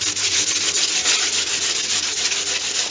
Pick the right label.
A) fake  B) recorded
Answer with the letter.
B